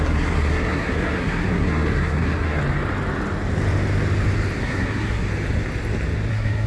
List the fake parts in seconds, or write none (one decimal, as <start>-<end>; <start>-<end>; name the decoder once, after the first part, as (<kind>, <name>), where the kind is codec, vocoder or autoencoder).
0.0-2.6 (codec, SNAC); 4.6-5.3; 6.3-6.7